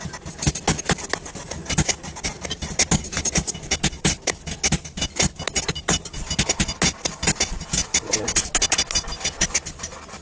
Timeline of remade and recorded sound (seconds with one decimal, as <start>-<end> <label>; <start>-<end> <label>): 0.0-10.2 recorded